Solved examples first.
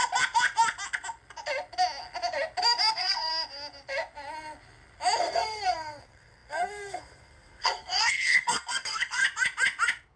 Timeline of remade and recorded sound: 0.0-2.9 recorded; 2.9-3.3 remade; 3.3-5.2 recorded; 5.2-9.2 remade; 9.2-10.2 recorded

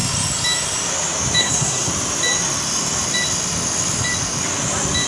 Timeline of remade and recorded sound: 0.0-1.4 recorded; 1.4-1.9 remade; 1.9-5.1 recorded

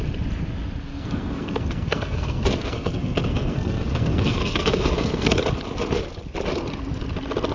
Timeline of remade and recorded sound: 0.0-0.9 recorded; 0.9-5.4 remade; 5.4-7.5 recorded

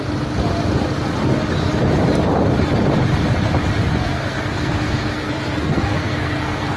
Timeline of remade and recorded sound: 0.0-3.9 recorded; 3.9-6.8 remade

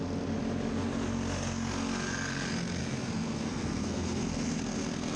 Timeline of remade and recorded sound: 0.0-2.8 recorded; 2.8-5.2 remade